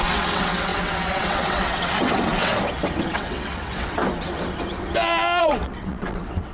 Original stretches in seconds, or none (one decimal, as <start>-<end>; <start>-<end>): 2.5-3.1; 4.0-5.4